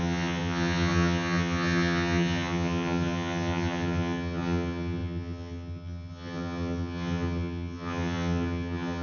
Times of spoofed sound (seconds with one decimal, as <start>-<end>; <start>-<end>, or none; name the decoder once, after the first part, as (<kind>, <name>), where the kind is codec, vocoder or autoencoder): 0.0-9.0 (vocoder, HiFi-GAN)